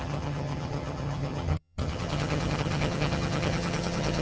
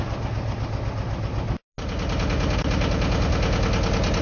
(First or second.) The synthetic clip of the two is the first